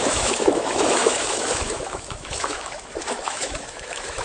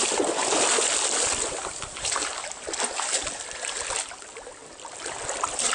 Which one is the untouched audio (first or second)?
second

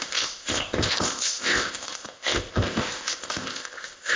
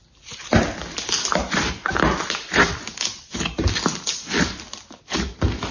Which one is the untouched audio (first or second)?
second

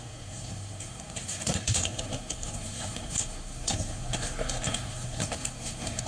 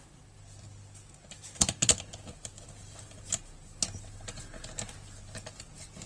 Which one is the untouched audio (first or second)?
second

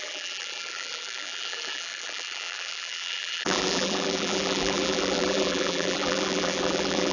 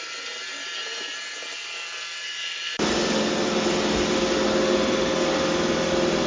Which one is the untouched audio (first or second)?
second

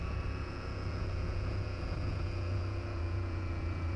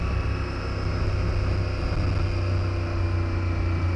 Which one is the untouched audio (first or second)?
second